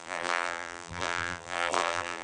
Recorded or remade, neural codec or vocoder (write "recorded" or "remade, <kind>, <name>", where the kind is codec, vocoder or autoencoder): remade, vocoder, BigVGAN v2